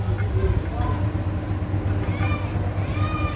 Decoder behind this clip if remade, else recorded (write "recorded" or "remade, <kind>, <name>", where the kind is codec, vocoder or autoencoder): recorded